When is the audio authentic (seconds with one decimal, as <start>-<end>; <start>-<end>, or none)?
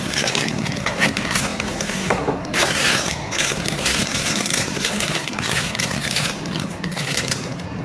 none